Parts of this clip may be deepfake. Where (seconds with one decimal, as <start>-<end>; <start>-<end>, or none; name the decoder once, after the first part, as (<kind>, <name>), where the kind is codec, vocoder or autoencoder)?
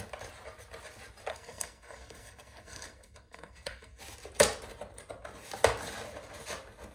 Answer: 1.3-4.0 (codec, SNAC)